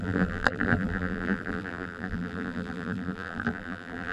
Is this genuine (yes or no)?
no